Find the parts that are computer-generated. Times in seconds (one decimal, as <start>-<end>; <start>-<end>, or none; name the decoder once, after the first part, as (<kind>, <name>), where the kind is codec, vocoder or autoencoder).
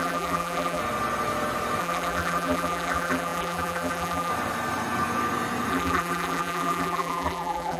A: 0.0-0.8 (vocoder, BigVGAN v2); 1.8-4.3; 5.7-7.8